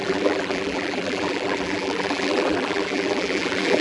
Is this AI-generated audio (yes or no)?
yes